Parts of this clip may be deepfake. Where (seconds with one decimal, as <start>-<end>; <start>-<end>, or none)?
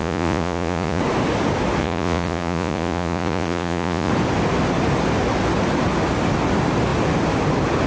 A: 0.0-1.0; 1.8-4.1